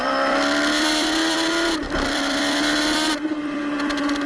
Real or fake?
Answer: fake